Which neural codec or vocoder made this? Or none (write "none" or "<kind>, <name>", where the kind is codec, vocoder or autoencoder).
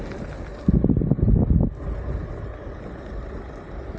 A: none